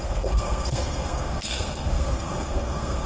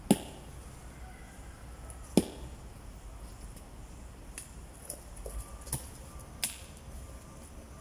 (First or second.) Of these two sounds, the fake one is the first